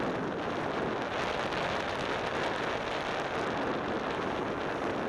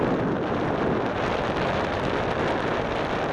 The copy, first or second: second